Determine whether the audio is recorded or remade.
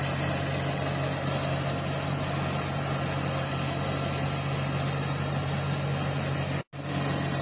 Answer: recorded